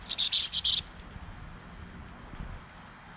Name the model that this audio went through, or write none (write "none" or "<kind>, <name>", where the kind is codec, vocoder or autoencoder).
none